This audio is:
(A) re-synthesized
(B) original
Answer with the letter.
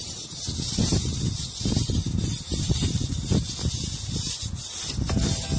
B